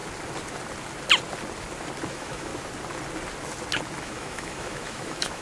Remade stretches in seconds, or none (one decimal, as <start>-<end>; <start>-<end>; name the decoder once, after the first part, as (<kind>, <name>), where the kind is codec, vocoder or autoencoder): 2.1-2.5 (autoencoder, DAC-VAE); 4.0-5.4